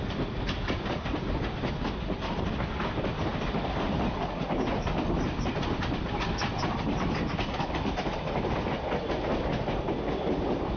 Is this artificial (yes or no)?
no